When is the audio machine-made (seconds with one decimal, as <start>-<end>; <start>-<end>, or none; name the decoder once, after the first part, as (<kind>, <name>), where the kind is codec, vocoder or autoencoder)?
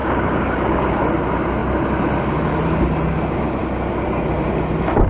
0.0-1.0 (codec, DAC)